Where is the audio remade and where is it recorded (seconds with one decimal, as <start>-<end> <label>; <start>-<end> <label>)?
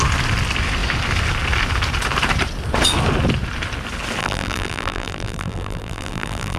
0.0-4.2 recorded; 4.2-6.6 remade